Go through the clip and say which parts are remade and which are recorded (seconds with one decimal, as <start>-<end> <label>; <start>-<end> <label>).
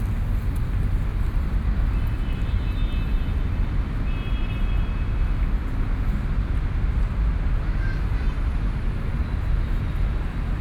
0.0-1.1 recorded; 1.1-4.5 remade; 4.5-10.6 recorded